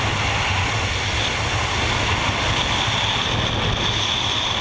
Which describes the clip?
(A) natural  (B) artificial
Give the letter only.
A